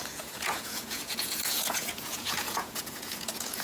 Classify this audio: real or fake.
fake